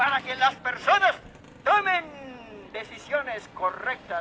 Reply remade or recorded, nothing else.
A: recorded